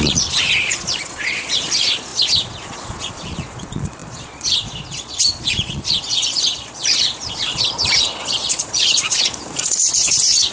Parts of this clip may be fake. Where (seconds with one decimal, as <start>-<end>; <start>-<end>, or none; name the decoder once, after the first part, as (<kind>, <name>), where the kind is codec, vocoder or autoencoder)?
0.0-10.5 (vocoder, Vocos)